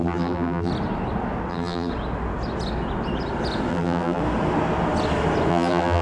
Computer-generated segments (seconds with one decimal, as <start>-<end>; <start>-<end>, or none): 0.0-0.7; 1.5-1.9; 3.7-4.2; 5.5-6.0